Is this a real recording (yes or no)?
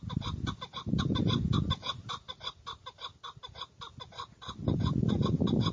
yes